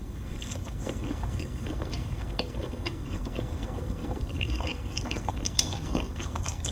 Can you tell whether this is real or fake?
fake